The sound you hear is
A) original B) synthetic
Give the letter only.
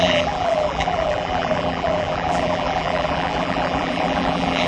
B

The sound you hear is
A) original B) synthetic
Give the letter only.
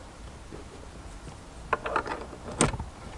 A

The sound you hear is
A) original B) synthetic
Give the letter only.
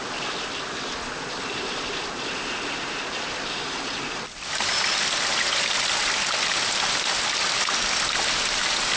A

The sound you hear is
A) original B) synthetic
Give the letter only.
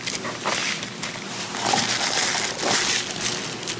B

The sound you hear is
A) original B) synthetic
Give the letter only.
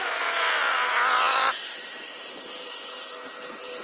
A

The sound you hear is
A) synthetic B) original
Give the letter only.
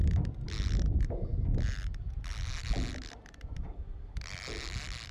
B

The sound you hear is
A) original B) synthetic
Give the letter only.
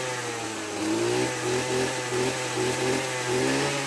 A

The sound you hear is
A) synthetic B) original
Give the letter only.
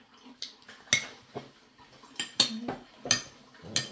B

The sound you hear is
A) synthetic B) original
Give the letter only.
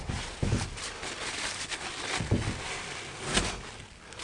B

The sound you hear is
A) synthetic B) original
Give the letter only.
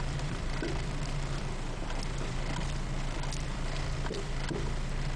A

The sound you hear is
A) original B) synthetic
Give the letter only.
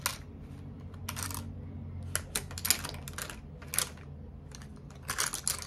A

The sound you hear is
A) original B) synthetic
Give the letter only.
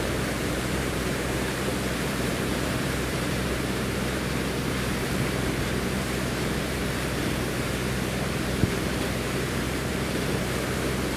B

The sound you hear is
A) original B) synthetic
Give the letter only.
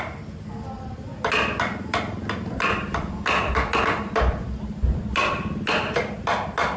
A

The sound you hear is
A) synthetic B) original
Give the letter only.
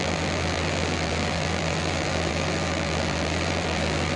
A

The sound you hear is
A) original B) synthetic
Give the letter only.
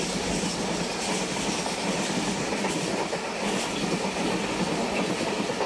A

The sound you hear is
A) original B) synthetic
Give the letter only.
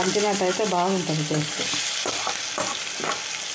A